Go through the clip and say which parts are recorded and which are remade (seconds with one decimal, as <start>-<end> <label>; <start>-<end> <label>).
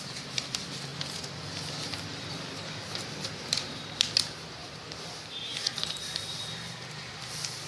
0.0-7.7 remade